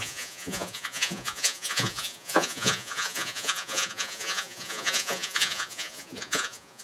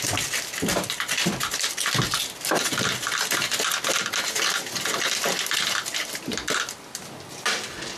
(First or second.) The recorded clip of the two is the second